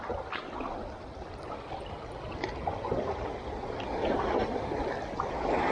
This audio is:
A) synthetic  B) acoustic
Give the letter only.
B